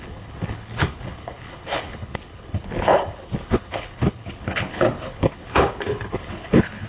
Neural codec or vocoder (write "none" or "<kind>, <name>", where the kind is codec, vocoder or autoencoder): codec, HILCodec